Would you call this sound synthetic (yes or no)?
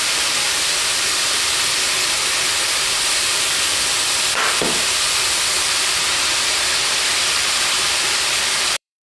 yes